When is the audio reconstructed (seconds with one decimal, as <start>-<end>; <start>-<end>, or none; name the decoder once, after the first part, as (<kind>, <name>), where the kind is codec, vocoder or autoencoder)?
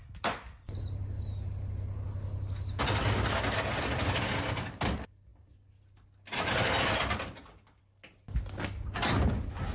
none